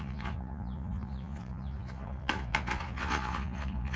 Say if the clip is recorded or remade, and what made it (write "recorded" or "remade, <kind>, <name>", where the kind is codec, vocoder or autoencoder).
remade, vocoder, Vocos